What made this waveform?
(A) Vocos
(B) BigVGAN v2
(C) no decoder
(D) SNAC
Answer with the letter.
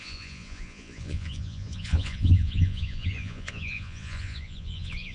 A